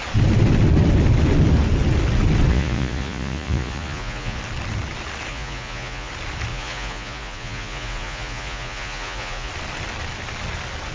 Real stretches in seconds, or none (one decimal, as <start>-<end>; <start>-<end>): 0.0-2.5; 4.4-5.3; 6.1-6.5; 9.5-10.9